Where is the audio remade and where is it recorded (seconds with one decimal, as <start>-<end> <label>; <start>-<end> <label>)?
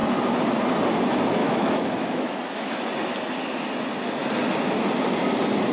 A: 0.0-1.4 recorded; 1.4-2.9 remade; 2.9-5.7 recorded